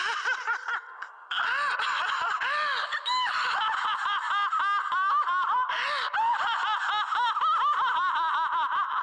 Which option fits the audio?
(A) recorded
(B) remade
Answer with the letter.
A